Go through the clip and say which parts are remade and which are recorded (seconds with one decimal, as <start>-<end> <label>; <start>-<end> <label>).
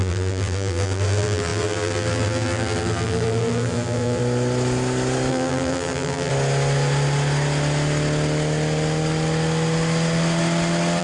0.0-4.2 remade; 4.2-5.3 recorded; 5.3-6.3 remade; 6.3-11.0 recorded